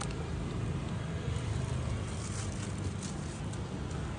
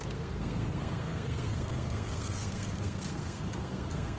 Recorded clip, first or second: first